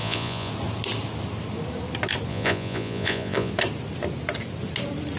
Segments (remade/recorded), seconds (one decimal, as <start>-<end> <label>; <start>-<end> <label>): 0.0-0.5 remade; 0.5-2.3 recorded; 2.3-3.5 remade; 3.5-5.2 recorded